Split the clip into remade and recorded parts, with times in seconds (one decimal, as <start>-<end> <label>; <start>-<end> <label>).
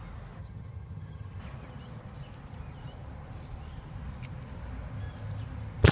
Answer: 0.0-0.4 recorded; 0.4-1.4 remade; 1.4-5.9 recorded